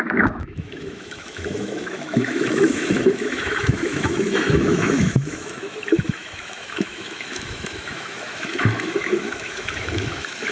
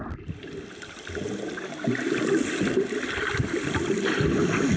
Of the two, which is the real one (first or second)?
second